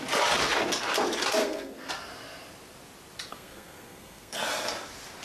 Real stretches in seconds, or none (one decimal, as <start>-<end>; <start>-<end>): 0.0-1.4; 1.9-3.3; 4.4-5.2

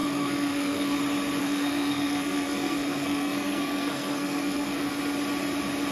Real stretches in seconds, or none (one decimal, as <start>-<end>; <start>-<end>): 1.0-1.4; 4.9-5.9

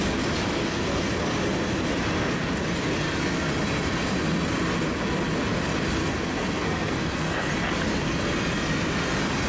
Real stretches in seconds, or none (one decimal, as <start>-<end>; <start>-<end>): 0.0-6.0; 7.5-9.5

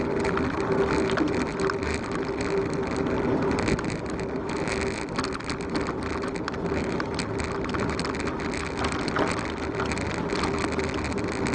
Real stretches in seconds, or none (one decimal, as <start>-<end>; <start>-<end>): 0.0-11.5

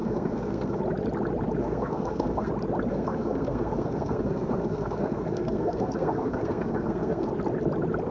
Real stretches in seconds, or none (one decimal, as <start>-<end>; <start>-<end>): 0.8-1.6; 2.5-2.9; 7.3-8.1

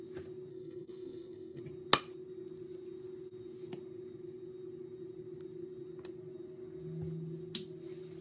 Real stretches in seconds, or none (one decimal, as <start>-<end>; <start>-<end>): 0.0-0.5; 1.6-8.2